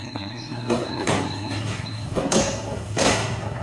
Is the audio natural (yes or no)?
no